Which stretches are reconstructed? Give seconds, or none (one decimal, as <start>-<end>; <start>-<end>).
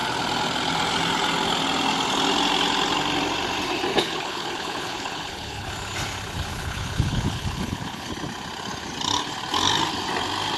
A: 3.9-5.7; 6.5-8.1